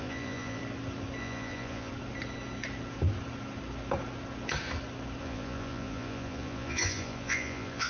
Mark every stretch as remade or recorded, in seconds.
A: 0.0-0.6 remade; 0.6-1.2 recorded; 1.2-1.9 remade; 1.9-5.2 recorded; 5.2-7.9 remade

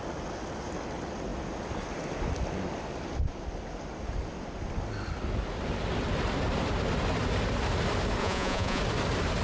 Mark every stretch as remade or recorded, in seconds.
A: 0.0-8.2 recorded; 8.2-8.8 remade; 8.8-9.4 recorded

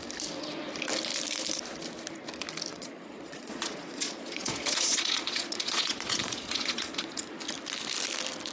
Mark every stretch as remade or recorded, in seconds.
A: 0.0-2.7 recorded; 2.7-7.2 remade; 7.2-8.5 recorded